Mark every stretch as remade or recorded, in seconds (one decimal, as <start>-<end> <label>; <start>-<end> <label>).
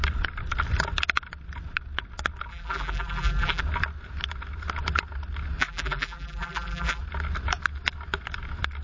0.0-2.5 recorded; 2.5-3.6 remade; 3.6-5.6 recorded; 5.6-7.0 remade; 7.0-8.8 recorded